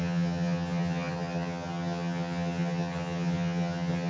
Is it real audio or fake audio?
fake